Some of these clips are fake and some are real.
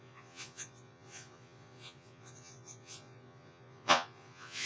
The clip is fake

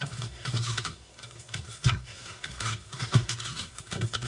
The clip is fake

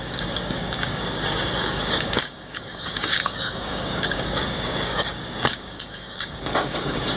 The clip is fake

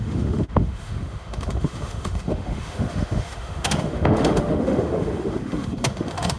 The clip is fake